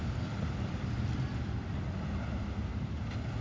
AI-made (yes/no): no